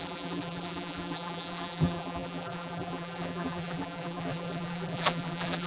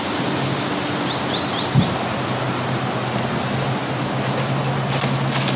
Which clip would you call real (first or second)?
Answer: second